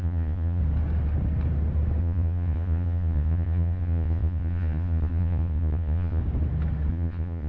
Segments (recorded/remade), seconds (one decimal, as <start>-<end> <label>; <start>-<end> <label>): 0.0-0.6 remade; 0.6-2.0 recorded; 2.0-6.2 remade; 6.2-6.9 recorded; 6.9-7.5 remade